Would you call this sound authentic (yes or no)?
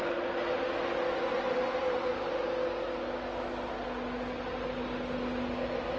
yes